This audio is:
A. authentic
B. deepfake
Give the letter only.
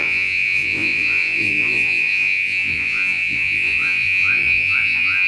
B